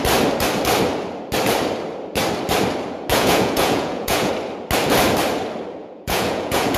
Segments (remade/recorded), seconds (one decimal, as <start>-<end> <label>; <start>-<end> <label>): 0.0-3.1 recorded; 3.1-4.3 remade; 4.3-5.8 recorded; 5.8-6.8 remade

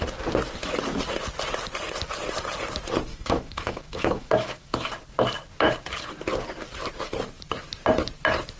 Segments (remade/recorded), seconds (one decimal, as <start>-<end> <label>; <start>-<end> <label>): 0.0-3.1 recorded; 3.1-4.9 remade; 4.9-8.6 recorded

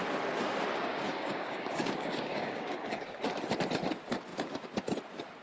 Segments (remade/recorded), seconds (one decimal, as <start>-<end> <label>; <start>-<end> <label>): 0.0-0.9 recorded; 0.9-3.2 remade; 3.2-5.4 recorded

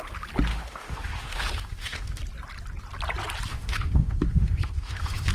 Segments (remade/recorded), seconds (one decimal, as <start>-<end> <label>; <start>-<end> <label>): 0.0-0.5 recorded; 0.5-2.2 remade; 2.2-3.5 recorded; 3.5-5.3 remade

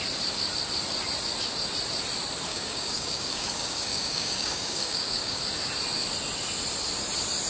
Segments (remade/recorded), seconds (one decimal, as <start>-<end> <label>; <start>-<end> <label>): 0.0-2.5 recorded; 2.5-5.4 remade; 5.4-7.5 recorded

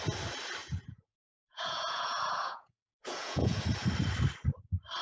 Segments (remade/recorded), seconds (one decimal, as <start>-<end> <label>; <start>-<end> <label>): 0.0-0.6 recorded; 0.6-3.6 remade; 3.6-5.0 recorded